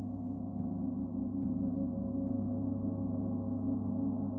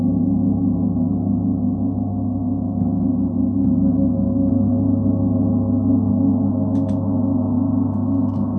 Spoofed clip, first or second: second